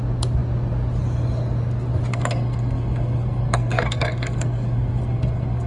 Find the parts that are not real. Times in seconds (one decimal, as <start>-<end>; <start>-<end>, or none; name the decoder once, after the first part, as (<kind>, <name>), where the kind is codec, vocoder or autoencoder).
2.1-5.7 (codec, SNAC)